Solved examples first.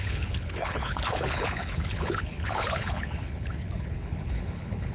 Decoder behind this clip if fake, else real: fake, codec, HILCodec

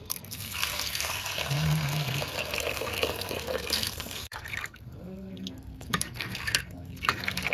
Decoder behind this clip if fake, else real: fake, codec, SNAC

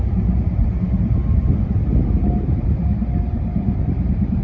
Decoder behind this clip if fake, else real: real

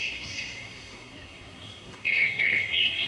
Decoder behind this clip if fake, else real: fake, codec, SNAC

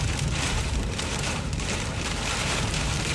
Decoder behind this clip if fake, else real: fake, vocoder, BigVGAN v2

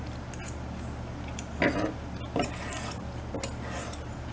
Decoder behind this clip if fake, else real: real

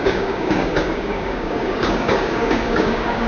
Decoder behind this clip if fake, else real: fake, codec, DAC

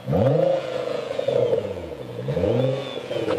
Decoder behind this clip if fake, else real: fake, vocoder, Vocos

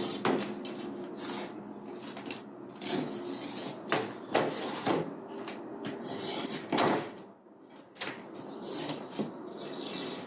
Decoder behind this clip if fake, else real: real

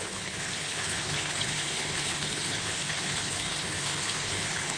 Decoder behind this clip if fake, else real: fake, codec, HILCodec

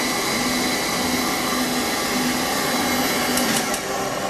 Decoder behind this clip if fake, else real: real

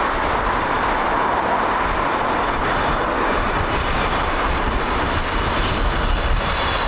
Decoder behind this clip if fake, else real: real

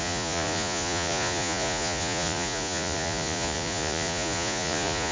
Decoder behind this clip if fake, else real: fake, vocoder, Vocos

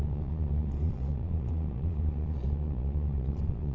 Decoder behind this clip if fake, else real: fake, vocoder, Vocos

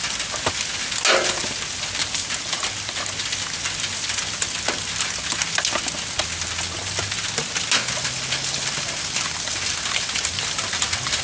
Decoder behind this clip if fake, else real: real